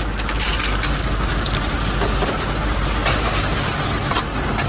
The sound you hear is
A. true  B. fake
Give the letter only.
A